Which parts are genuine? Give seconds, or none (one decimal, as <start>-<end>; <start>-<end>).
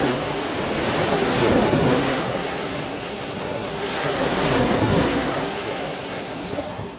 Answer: 0.4-1.1